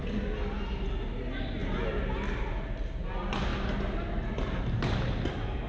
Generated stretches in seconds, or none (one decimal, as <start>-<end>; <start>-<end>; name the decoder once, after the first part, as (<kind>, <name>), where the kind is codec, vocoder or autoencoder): none